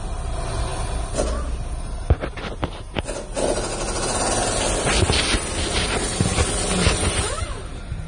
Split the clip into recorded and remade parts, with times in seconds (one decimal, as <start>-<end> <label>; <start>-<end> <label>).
0.0-8.1 recorded